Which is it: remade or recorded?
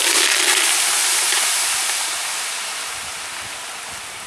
recorded